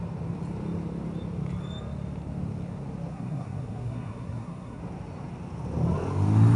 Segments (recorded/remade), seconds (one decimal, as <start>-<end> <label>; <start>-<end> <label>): 0.0-3.1 recorded; 3.1-4.8 remade; 4.8-6.6 recorded